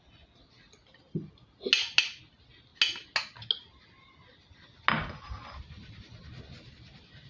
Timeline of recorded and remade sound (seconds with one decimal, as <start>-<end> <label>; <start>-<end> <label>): 0.0-7.3 recorded